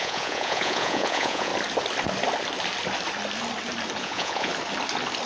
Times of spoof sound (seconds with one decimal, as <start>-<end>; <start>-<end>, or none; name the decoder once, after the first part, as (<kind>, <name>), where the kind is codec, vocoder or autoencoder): 0.0-1.5 (vocoder, Vocos); 4.0-4.5